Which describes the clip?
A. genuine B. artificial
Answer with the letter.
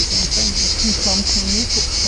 A